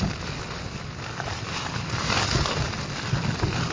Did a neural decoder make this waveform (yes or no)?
no